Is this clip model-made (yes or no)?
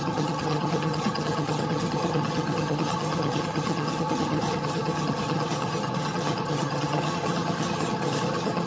yes